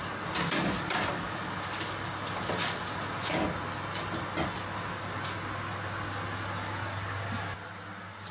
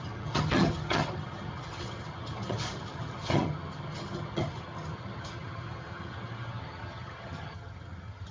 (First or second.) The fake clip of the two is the second